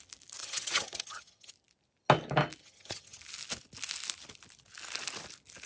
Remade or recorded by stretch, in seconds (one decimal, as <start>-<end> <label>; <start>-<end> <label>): 0.0-0.4 recorded; 0.4-1.5 remade; 1.5-2.6 recorded; 2.6-3.2 remade; 3.2-5.7 recorded